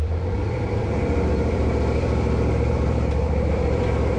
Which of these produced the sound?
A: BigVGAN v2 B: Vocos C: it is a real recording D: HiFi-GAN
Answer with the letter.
A